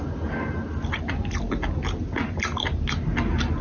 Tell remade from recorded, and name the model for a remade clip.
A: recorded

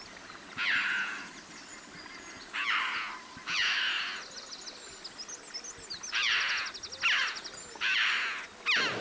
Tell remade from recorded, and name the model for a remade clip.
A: recorded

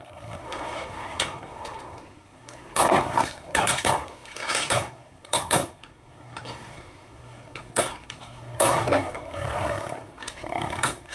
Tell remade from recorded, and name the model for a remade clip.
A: remade, codec, SNAC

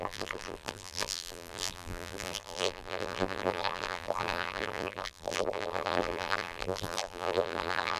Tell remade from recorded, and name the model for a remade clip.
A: remade, vocoder, BigVGAN v2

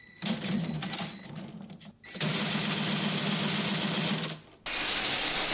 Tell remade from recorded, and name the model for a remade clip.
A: recorded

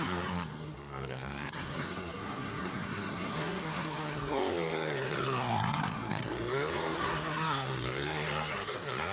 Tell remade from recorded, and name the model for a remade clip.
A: remade, codec, SNAC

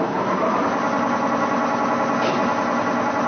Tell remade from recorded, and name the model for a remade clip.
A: recorded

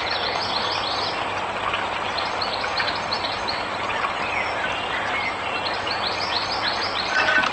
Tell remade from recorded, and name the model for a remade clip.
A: recorded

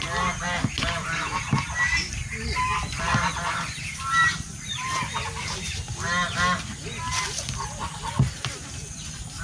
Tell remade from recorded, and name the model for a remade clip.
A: recorded